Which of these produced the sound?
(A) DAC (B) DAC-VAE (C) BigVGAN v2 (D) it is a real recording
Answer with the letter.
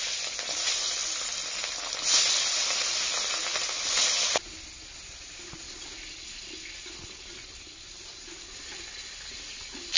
D